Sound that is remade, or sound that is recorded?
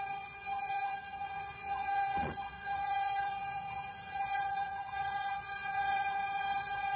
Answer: remade